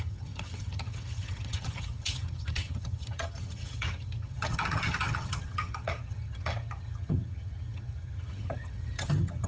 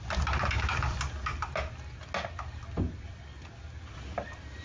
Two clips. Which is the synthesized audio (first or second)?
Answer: first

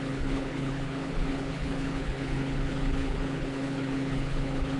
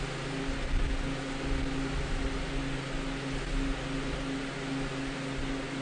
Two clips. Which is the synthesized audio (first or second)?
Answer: first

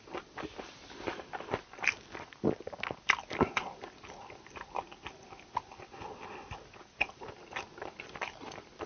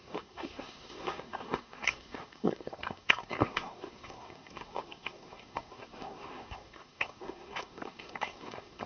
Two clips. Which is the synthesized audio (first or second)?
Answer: second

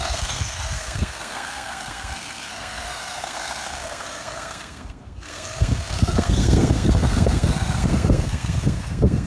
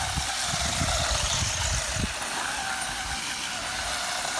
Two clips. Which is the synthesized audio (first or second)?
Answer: first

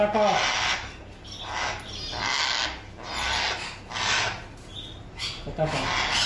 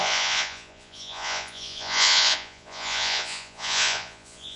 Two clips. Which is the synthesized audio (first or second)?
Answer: second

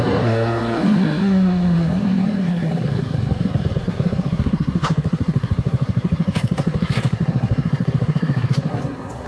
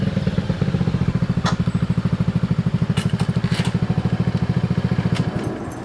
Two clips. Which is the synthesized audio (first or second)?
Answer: first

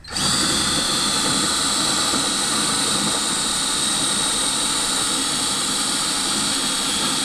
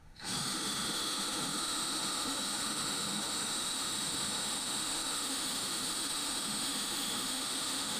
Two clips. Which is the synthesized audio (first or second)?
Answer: second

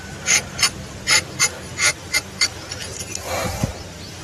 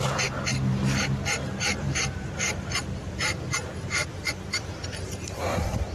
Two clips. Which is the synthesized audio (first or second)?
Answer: second